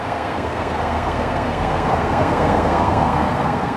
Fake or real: fake